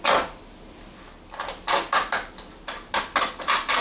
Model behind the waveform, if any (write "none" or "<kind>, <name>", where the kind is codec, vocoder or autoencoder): none